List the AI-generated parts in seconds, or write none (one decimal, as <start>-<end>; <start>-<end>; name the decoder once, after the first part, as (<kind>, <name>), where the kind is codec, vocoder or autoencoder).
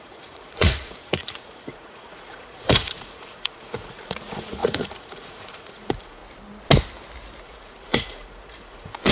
0.0-6.2 (vocoder, Vocos); 7.4-9.1